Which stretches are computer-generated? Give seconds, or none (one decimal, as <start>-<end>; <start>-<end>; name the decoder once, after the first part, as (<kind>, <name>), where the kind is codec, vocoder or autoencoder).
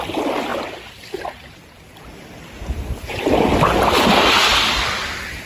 none